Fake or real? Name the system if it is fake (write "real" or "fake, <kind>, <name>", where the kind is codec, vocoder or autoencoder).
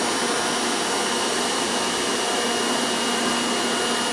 real